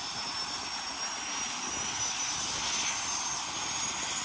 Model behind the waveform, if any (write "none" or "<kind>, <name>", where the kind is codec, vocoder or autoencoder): none